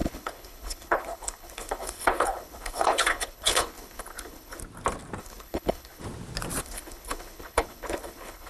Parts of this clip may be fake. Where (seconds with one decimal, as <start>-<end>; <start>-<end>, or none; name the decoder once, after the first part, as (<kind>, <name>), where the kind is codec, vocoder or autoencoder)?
0.0-4.6 (codec, HILCodec); 5.2-6.0; 6.6-8.5